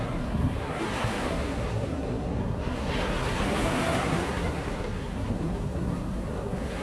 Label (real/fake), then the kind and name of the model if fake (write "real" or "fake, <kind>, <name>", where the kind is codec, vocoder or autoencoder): fake, codec, SNAC